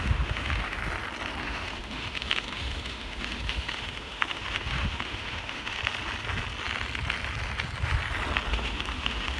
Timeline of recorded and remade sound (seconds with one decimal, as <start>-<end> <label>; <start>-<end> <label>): 0.0-0.8 remade; 0.8-1.4 recorded; 1.4-5.8 remade; 5.8-8.5 recorded; 8.5-9.4 remade